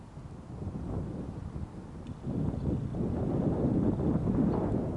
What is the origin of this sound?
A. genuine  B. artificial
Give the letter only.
A